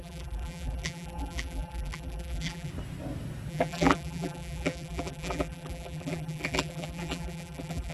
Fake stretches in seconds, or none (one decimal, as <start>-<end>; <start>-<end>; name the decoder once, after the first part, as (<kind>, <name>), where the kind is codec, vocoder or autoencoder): 0.0-2.7 (vocoder, BigVGAN v2); 3.5-7.9